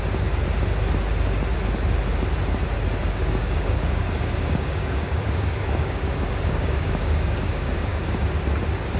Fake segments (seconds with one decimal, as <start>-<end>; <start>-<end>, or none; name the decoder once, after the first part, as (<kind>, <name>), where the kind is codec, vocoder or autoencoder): 3.0-8.0 (codec, DAC)